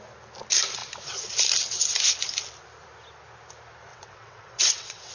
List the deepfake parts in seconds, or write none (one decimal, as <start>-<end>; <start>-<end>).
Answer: 3.9-5.1